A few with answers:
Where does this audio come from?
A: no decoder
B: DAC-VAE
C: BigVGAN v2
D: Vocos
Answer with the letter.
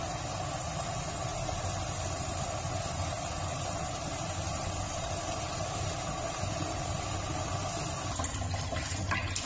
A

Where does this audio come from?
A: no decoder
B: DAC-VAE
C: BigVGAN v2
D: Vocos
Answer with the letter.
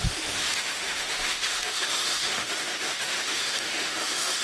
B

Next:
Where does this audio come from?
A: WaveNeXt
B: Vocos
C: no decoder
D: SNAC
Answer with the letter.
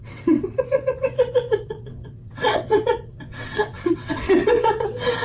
A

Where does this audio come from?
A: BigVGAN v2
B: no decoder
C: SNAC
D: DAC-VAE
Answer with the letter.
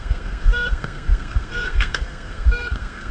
C